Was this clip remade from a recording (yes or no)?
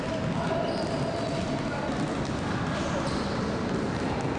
no